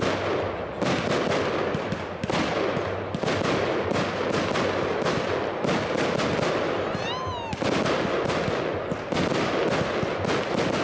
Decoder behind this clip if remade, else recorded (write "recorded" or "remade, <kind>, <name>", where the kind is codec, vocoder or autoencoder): recorded